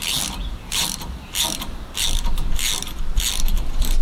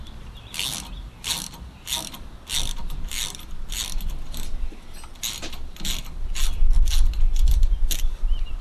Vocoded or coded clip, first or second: first